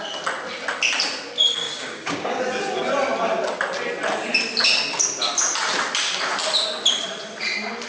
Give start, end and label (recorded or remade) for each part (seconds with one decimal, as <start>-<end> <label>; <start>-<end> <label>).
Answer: 0.0-1.6 recorded; 1.6-2.4 remade; 2.4-7.9 recorded